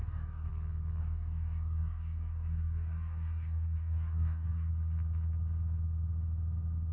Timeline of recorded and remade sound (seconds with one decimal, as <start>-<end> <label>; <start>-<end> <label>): 0.0-0.5 remade; 0.5-1.0 recorded; 1.0-4.7 remade; 4.7-6.9 recorded

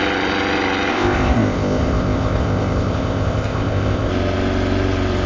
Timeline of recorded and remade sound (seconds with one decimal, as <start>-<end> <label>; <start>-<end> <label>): 0.0-0.9 recorded; 0.9-4.1 remade; 4.1-5.3 recorded